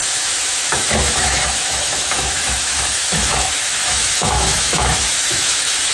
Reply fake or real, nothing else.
fake